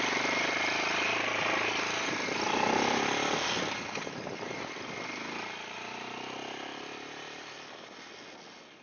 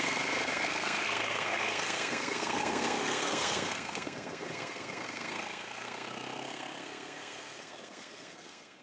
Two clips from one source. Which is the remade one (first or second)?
second